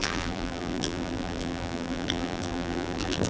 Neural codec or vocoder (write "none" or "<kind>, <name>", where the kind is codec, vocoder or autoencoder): vocoder, BigVGAN v2